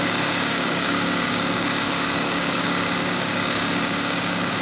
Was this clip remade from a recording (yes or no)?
yes